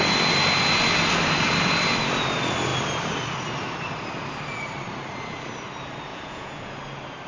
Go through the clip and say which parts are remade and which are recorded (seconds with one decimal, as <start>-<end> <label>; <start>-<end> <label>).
0.0-6.1 recorded; 6.1-6.7 remade; 6.7-7.3 recorded